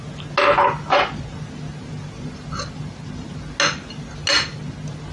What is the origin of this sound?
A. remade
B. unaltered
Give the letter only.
B